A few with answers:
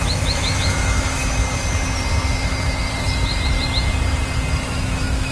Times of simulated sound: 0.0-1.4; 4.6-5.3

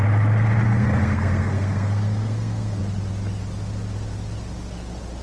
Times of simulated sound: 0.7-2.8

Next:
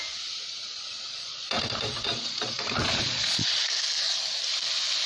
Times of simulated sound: 0.6-3.7

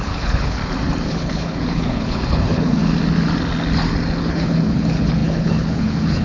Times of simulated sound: 0.0-0.6; 1.1-2.8; 4.2-6.2

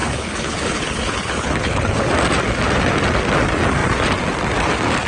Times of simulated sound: 0.0-2.1

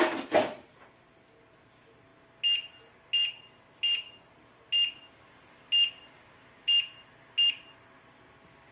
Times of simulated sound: none